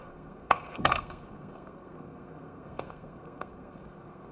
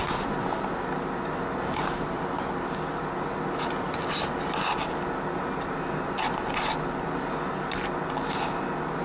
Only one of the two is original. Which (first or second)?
second